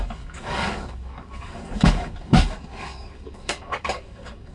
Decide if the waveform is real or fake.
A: fake